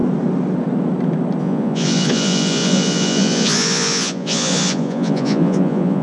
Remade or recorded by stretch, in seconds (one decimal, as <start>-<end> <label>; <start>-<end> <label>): 0.0-1.4 recorded; 1.4-6.0 remade

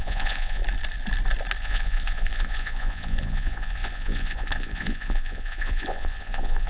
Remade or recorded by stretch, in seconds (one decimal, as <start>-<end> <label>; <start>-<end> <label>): 0.0-0.6 remade; 0.6-1.6 recorded; 1.6-6.7 remade

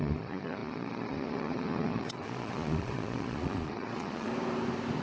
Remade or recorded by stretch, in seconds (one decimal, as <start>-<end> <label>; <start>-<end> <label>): 0.0-4.3 remade; 4.3-5.0 recorded

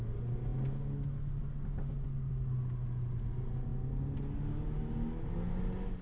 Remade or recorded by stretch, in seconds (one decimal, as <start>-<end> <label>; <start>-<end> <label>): 0.0-6.0 recorded

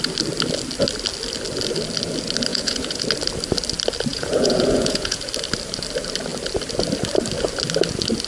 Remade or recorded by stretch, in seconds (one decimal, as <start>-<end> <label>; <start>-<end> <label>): 0.0-2.5 recorded; 2.5-3.0 remade; 3.0-4.1 recorded; 4.1-5.2 remade; 5.2-8.3 recorded